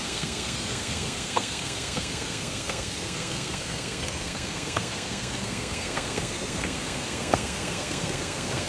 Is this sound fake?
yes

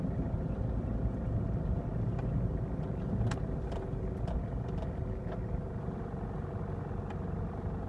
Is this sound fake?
no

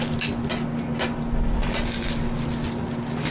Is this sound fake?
no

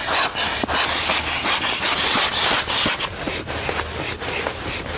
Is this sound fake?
no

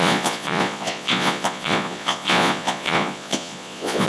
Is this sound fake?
yes